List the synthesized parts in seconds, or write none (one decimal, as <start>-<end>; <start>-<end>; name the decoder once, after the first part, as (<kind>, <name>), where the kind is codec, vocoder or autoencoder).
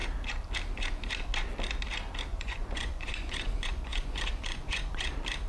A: 2.3-5.1 (vocoder, Vocos)